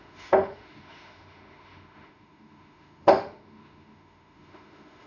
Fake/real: fake